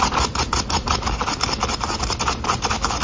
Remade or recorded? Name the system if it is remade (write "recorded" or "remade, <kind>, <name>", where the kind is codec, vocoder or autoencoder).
recorded